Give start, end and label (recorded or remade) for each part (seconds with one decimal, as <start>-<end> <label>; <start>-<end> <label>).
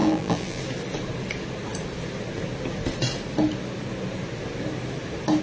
0.0-0.6 remade; 0.6-5.4 recorded